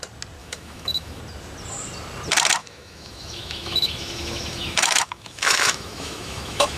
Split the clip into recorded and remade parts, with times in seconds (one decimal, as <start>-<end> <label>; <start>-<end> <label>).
0.0-0.4 recorded; 0.4-1.2 remade; 1.2-2.6 recorded; 2.6-6.8 remade

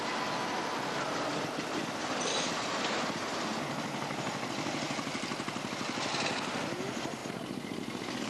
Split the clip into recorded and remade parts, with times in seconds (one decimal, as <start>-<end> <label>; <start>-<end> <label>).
0.0-8.3 recorded

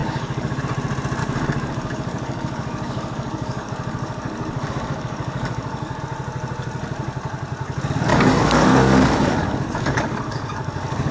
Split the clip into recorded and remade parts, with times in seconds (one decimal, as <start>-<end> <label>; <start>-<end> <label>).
0.0-0.6 remade; 0.6-1.2 recorded; 1.2-6.0 remade; 6.0-8.1 recorded; 8.1-11.1 remade

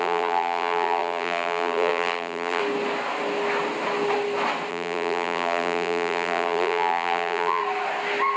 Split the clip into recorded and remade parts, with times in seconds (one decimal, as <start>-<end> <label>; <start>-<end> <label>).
0.0-2.6 remade; 2.6-4.7 recorded; 4.7-7.6 remade; 7.6-8.4 recorded

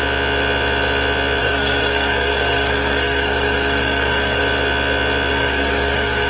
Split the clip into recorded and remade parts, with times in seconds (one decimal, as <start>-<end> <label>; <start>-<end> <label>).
0.0-1.4 recorded; 1.4-4.4 remade; 4.4-5.3 recorded; 5.3-6.3 remade

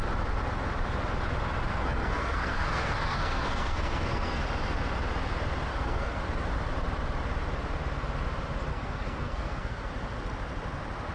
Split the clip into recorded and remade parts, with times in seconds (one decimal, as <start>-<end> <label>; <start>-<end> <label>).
0.0-1.7 recorded; 1.7-4.4 remade; 4.4-5.7 recorded; 5.7-6.2 remade; 6.2-8.7 recorded; 8.7-9.9 remade; 9.9-11.1 recorded

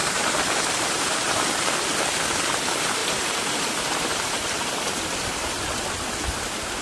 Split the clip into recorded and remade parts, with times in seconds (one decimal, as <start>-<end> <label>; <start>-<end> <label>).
0.0-1.5 remade; 1.5-3.0 recorded; 3.0-5.9 remade; 5.9-6.8 recorded

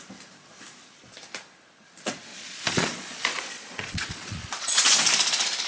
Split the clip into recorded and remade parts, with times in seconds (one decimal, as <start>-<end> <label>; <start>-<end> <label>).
0.0-2.3 recorded; 2.3-5.0 remade; 5.0-5.7 recorded